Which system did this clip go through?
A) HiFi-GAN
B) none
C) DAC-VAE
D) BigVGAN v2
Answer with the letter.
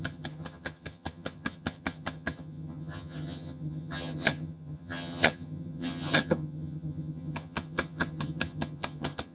A